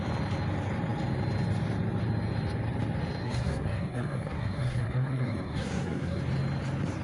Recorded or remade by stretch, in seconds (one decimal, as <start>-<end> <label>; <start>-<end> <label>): 0.0-3.2 recorded; 3.2-6.2 remade; 6.2-7.0 recorded